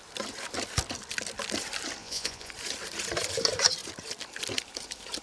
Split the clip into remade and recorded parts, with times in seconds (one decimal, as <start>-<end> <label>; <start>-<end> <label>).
0.0-2.0 recorded; 2.0-2.5 remade; 2.5-5.2 recorded